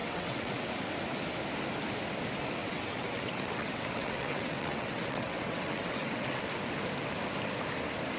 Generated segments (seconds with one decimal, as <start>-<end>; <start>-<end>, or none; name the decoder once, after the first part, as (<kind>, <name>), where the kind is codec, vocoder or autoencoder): 0.0-0.7 (vocoder, WaveNeXt); 2.6-6.4